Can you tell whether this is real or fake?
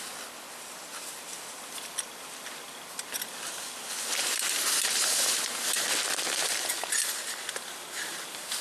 real